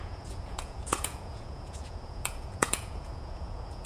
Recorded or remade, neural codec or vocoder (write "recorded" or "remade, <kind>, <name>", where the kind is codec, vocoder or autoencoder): remade, vocoder, Vocos